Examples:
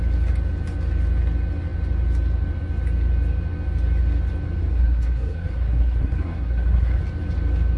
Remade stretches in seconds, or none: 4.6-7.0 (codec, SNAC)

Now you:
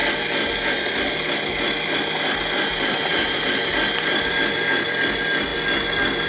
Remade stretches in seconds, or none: 2.7-5.5 (vocoder, BigVGAN v2)

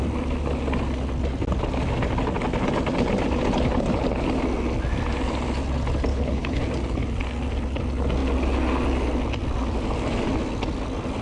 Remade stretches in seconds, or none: 6.1-6.6 (codec, HILCodec)

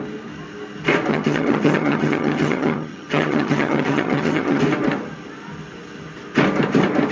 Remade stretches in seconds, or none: 1.1-4.6 (vocoder, HiFi-GAN)

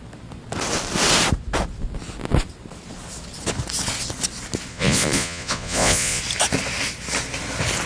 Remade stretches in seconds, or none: 4.7-6.2 (vocoder, Vocos)